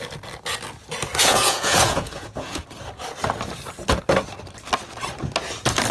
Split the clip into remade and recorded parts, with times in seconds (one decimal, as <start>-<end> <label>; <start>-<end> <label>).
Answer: 0.0-1.2 recorded; 1.2-2.6 remade; 2.6-5.9 recorded